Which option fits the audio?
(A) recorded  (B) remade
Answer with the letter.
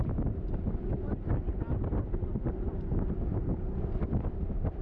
A